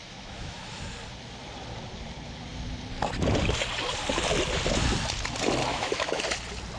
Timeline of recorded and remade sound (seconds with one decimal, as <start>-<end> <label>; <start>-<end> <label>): 0.0-0.8 remade; 0.8-5.7 recorded; 5.7-6.2 remade; 6.2-6.8 recorded